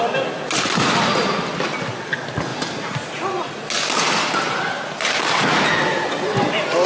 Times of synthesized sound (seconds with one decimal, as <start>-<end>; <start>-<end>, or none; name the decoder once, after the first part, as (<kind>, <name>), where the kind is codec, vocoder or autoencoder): none